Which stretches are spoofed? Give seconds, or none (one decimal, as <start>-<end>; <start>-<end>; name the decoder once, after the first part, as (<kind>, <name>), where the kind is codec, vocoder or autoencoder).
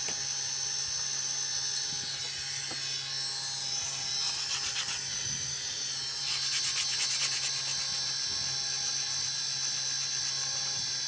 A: none